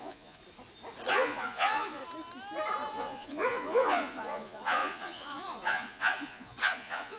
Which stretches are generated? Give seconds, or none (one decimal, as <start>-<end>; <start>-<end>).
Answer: 0.0-0.4; 1.1-2.0; 2.9-7.2